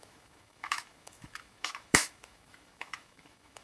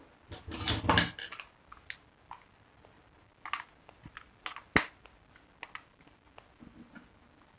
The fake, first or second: first